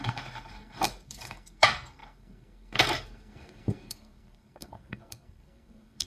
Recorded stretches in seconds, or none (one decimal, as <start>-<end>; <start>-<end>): none